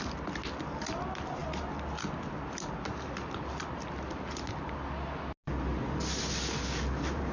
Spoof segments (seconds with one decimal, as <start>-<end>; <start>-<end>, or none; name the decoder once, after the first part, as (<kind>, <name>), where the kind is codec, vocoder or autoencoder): none